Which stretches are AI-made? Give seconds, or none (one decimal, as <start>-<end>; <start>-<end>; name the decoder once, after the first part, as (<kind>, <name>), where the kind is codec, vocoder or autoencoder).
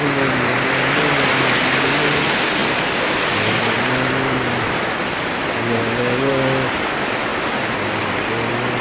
5.8-6.3 (codec, DAC)